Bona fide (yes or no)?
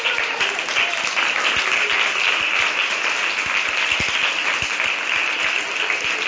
yes